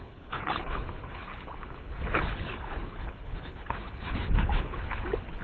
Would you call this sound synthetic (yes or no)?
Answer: yes